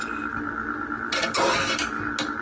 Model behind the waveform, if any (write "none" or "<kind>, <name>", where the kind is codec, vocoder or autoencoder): none